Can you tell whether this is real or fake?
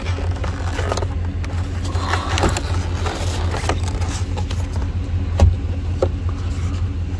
real